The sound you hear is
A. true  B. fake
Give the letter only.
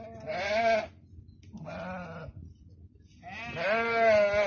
A